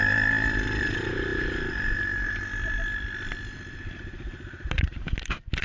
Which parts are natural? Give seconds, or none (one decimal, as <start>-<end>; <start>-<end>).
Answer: 0.0-5.6